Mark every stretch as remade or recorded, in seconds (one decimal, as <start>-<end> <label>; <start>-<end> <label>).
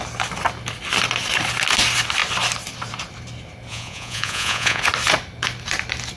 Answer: 0.0-3.7 recorded; 3.7-4.8 remade; 4.8-6.2 recorded